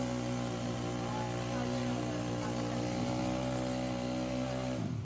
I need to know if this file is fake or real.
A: real